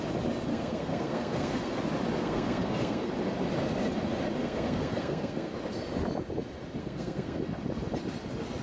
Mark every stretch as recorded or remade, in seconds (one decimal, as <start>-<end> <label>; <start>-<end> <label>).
0.0-0.5 recorded; 0.5-1.8 remade; 1.8-2.2 recorded; 2.2-3.1 remade; 3.1-4.4 recorded; 4.4-5.5 remade; 5.5-6.8 recorded; 6.8-7.4 remade; 7.4-8.6 recorded